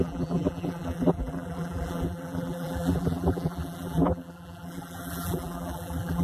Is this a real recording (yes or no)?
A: no